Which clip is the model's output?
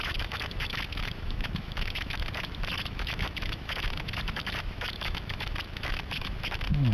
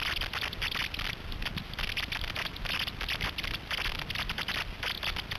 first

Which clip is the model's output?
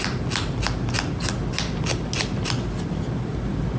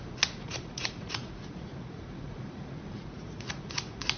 second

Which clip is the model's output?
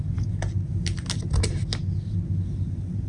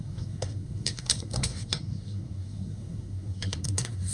second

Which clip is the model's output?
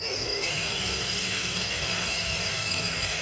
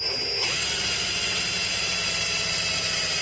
first